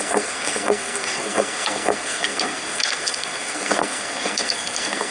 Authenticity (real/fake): fake